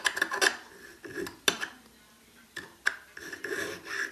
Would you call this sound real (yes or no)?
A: yes